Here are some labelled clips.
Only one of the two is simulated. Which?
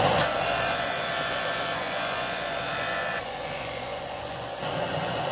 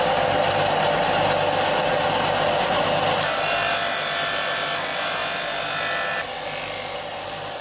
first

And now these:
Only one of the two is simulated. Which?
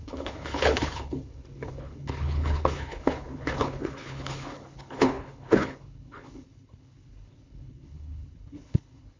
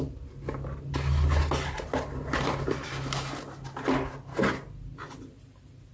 first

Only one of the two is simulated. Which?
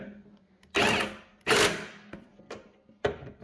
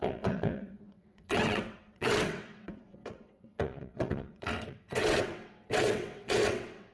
second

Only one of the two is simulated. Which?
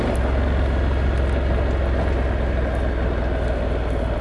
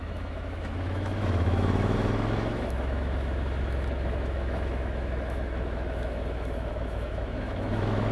second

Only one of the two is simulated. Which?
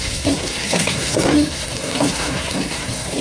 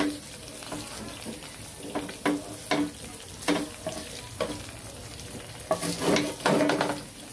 first